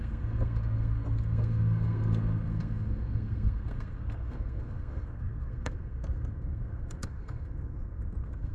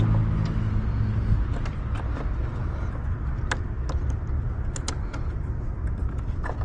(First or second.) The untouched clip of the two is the second